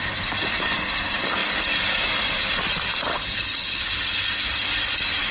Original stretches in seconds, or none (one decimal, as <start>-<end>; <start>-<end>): 0.0-3.1; 3.8-5.3